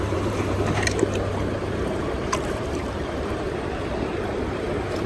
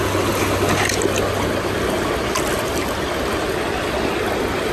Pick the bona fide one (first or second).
second